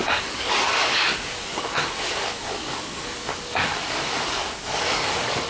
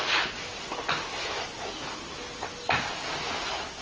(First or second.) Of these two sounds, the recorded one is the second